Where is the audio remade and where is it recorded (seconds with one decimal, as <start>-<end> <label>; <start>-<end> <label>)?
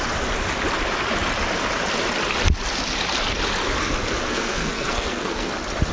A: 0.0-4.3 recorded; 4.3-5.5 remade; 5.5-5.9 recorded